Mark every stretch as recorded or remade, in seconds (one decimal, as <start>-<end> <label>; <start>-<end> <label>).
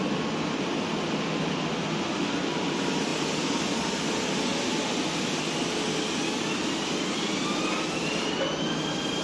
0.0-9.2 recorded